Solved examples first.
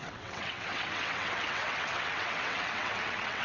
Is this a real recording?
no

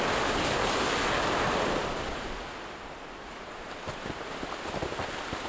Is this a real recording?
yes